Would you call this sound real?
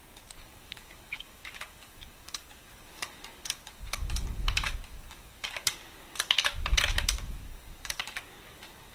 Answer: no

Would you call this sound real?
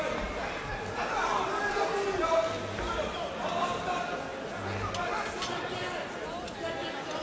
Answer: yes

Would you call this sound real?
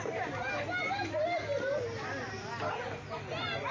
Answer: yes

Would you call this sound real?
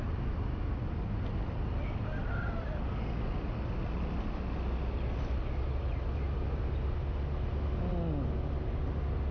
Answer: yes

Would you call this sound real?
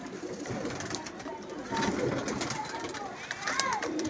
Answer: yes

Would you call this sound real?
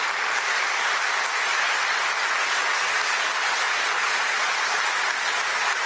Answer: yes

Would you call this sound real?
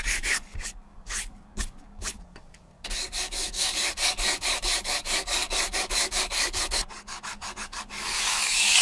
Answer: no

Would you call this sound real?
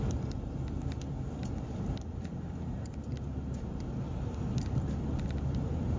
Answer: yes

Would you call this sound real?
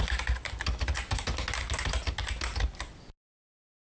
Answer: yes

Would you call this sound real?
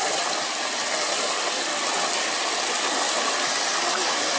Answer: yes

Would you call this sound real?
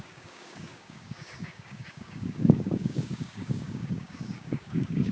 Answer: no